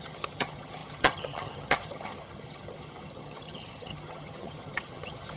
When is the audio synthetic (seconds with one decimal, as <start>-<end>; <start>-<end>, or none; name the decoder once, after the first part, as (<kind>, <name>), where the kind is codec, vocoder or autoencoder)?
0.0-5.4 (vocoder, HiFi-GAN)